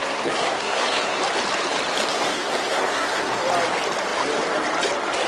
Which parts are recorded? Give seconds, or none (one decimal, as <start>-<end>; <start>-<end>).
1.2-2.1; 3.4-5.3